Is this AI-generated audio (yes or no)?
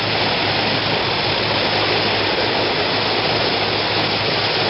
no